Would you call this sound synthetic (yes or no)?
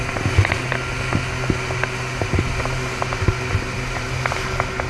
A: no